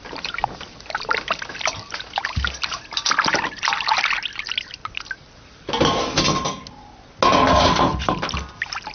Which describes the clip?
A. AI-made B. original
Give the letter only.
B